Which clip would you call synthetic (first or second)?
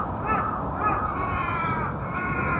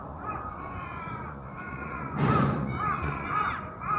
second